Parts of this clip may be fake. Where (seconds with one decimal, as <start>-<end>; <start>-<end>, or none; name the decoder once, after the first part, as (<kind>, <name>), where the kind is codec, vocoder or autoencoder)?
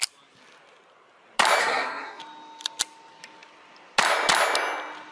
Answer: 1.6-2.2 (codec, SNAC)